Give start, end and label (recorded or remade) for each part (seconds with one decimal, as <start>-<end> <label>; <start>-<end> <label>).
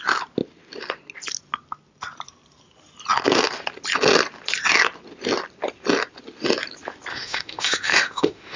0.0-7.1 recorded; 7.1-8.6 remade